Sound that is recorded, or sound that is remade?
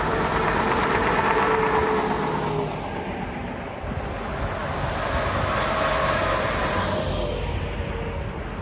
recorded